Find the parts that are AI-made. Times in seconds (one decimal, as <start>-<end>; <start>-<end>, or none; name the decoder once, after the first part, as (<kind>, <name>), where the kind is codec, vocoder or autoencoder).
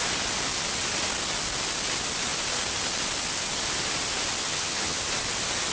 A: 4.4-5.0 (vocoder, HiFi-GAN)